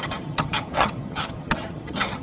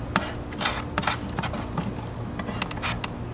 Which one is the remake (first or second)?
first